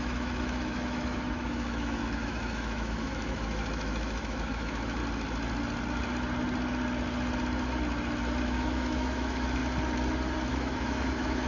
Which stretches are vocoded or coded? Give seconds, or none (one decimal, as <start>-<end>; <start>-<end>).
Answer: 0.0-5.0; 8.4-9.6; 10.5-11.5

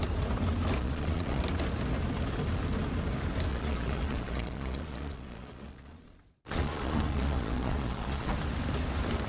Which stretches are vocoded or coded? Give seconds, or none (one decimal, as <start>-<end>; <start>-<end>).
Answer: 0.8-1.4; 3.5-8.3